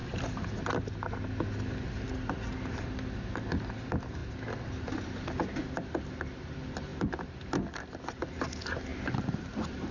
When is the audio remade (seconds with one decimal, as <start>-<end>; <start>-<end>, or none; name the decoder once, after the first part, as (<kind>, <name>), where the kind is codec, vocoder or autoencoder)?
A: none